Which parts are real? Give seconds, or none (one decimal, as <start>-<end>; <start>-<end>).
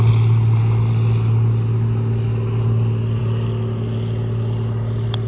0.0-5.3